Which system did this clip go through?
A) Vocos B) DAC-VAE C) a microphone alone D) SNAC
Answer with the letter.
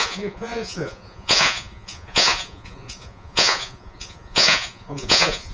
A